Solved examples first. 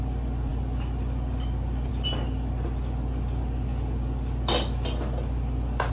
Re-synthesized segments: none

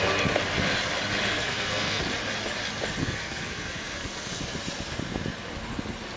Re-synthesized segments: 1.3-2.0 (codec, SNAC); 3.0-4.4